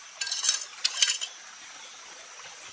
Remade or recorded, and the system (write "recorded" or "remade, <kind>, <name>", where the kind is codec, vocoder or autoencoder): recorded